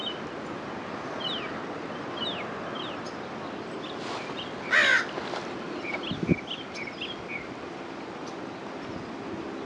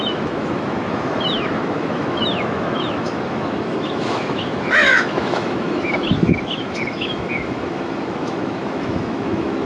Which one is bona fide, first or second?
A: first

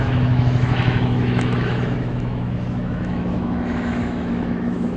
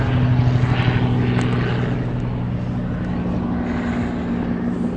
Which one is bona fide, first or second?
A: second